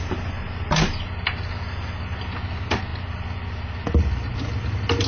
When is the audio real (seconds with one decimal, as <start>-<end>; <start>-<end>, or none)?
0.0-5.1